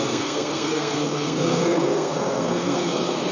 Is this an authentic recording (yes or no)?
no